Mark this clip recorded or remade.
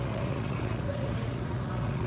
remade